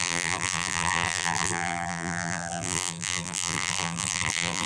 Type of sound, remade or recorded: remade